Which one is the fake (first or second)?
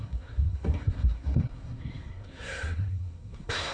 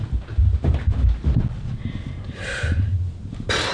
first